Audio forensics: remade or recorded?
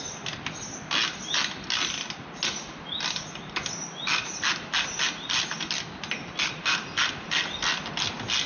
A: recorded